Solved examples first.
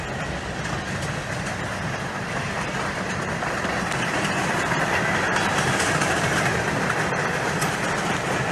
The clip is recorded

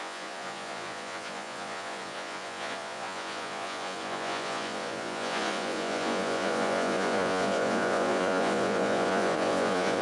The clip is remade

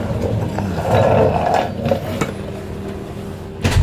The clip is recorded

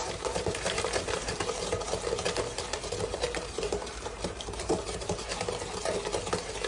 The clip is remade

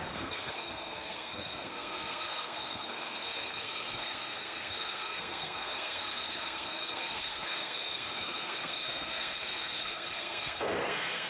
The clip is remade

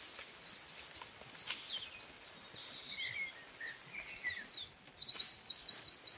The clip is recorded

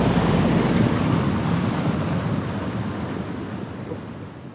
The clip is recorded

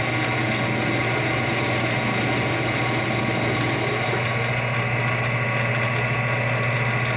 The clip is recorded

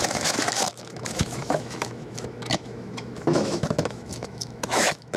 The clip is remade